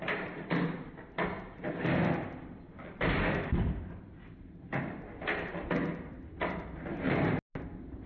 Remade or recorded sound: recorded